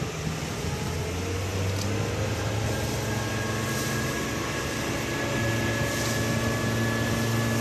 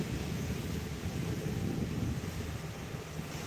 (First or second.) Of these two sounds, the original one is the first